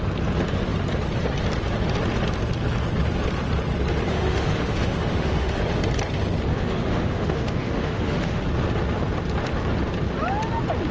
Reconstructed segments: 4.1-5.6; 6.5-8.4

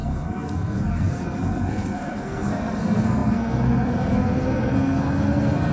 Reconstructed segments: 0.0-5.7

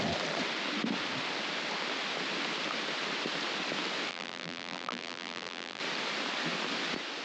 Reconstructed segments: 4.1-5.8

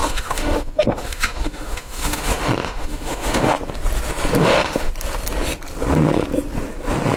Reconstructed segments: 0.0-3.5; 4.4-4.9